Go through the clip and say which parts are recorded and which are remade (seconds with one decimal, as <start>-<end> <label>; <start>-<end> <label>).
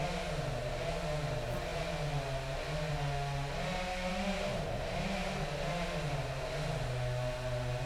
0.0-7.9 recorded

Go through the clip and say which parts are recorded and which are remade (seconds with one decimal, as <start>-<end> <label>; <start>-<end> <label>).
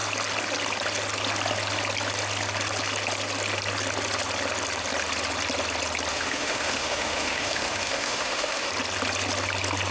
0.0-6.1 recorded; 6.1-8.7 remade; 8.7-9.9 recorded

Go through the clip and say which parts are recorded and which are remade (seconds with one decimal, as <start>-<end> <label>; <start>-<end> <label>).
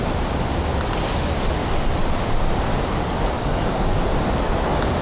0.0-2.7 recorded; 2.7-4.1 remade; 4.1-5.0 recorded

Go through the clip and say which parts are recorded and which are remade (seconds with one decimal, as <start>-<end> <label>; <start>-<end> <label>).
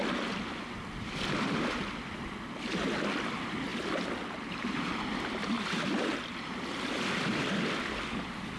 0.0-8.6 recorded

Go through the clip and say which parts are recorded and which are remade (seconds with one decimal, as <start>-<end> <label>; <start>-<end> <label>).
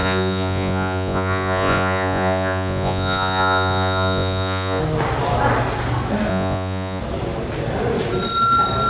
0.0-4.8 remade; 4.8-6.3 recorded; 6.3-7.0 remade; 7.0-8.9 recorded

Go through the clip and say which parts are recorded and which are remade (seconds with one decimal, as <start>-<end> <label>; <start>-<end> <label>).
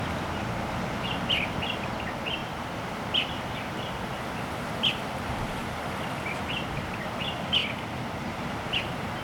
0.0-2.4 recorded; 2.4-4.2 remade; 4.2-9.2 recorded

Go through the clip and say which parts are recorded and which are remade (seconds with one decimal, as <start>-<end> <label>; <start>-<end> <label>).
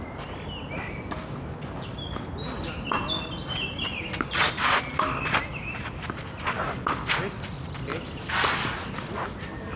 0.0-9.8 recorded